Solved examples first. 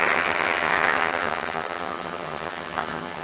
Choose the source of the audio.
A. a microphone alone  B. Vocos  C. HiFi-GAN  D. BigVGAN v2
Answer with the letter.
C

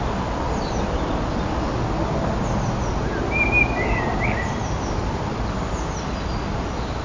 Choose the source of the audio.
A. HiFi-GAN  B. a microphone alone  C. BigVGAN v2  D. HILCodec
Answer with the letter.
B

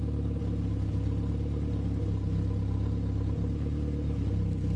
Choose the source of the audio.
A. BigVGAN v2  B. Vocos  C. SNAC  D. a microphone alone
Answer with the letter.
D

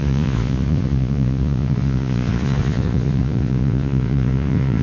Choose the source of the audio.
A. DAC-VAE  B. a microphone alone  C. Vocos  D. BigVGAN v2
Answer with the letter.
C